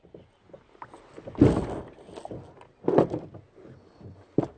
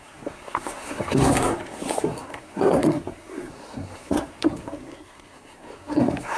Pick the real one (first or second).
first